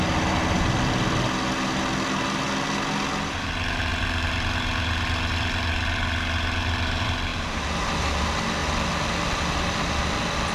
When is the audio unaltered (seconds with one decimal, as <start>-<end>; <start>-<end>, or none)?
0.0-10.5